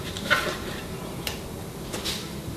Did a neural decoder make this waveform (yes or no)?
no